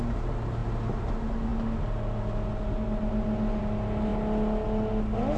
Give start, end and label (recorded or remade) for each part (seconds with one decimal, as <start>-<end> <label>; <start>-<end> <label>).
0.0-5.4 recorded